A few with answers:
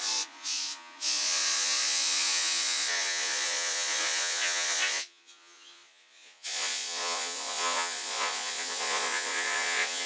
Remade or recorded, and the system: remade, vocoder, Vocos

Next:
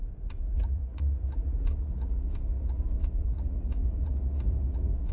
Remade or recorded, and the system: remade, vocoder, Vocos